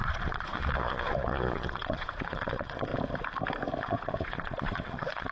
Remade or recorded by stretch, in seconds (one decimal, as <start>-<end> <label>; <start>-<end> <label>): 0.0-2.9 remade; 2.9-3.8 recorded; 3.8-5.3 remade